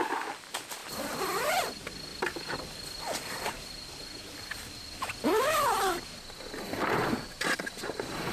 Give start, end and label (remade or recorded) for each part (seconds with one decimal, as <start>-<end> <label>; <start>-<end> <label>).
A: 0.0-0.8 recorded; 0.8-1.5 remade; 1.5-2.1 recorded; 2.1-5.8 remade; 5.8-8.3 recorded